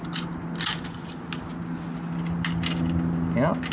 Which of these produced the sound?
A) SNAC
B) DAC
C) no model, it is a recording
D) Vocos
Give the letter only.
C